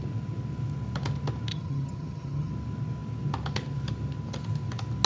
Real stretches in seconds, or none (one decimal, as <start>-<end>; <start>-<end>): 0.0-1.5; 2.5-5.1